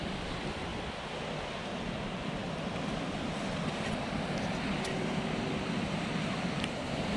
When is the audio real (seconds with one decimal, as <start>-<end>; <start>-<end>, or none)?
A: none